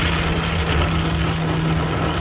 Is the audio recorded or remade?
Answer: recorded